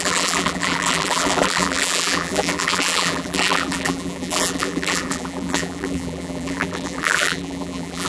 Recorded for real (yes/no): no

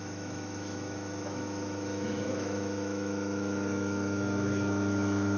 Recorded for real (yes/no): no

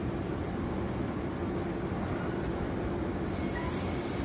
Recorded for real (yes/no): yes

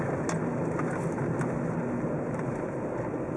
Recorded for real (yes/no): yes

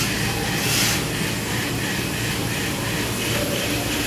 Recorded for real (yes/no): yes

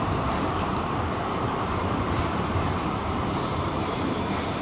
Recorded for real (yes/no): no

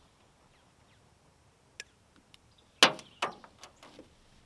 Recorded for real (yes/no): yes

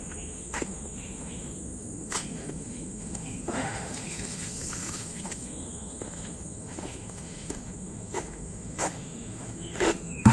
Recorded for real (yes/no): no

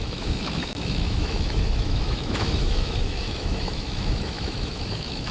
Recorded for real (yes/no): no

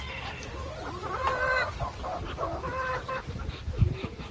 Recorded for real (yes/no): yes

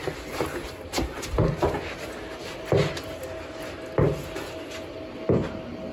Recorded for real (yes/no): yes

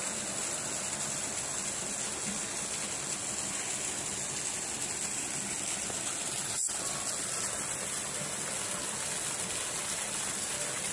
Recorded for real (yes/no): yes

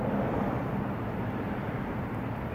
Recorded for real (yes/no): yes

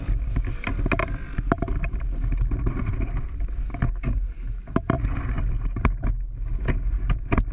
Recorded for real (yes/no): yes